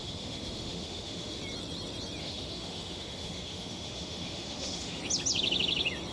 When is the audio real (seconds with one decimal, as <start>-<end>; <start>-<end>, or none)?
1.4-2.2; 5.0-6.1